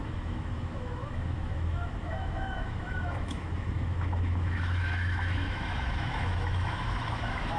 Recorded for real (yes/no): no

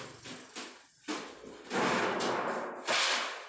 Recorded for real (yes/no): yes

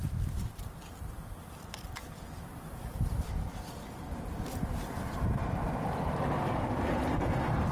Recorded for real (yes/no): yes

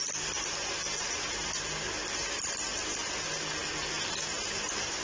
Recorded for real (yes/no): yes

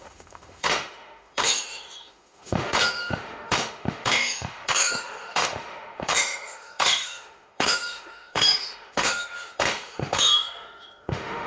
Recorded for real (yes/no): no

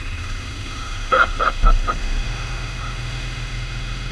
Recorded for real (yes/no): no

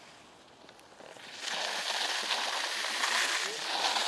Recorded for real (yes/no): yes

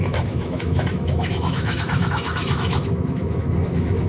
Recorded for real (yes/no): no